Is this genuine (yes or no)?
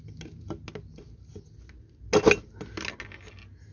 yes